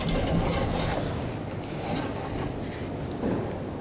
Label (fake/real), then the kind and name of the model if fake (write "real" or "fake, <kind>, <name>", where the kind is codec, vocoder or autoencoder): real